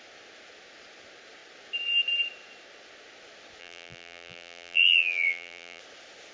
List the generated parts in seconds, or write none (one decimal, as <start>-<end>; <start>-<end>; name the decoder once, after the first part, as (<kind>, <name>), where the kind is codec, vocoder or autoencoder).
3.6-5.8 (vocoder, BigVGAN v2)